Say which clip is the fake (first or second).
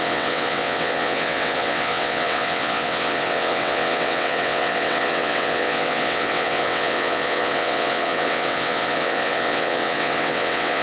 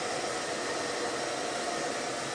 first